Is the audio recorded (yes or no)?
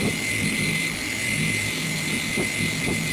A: yes